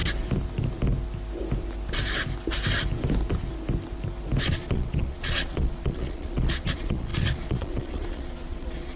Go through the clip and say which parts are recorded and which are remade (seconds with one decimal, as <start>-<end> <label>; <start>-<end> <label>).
0.0-4.4 recorded; 4.4-9.0 remade